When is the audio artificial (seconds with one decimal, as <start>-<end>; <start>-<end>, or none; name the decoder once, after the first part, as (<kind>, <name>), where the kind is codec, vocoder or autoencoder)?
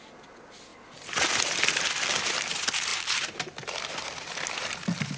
none